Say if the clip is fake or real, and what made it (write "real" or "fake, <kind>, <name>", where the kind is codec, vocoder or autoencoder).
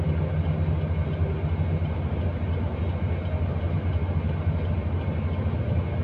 real